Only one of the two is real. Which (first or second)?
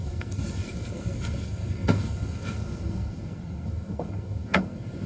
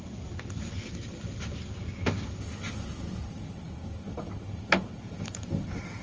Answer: second